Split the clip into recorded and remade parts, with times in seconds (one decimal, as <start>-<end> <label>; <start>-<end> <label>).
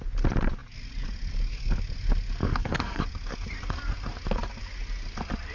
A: 0.0-2.4 recorded; 2.4-3.0 remade; 3.0-5.5 recorded